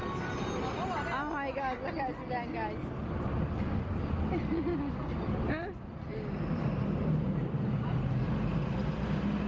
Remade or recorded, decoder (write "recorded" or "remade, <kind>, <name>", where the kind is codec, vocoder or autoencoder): recorded